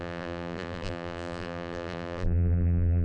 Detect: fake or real fake